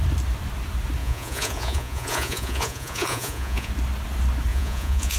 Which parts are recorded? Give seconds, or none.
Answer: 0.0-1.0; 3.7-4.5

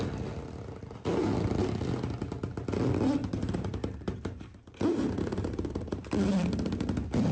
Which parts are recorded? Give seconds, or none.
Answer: 0.0-3.2; 5.9-7.3